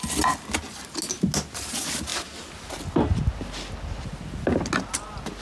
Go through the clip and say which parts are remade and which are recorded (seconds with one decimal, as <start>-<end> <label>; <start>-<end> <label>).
0.0-5.4 recorded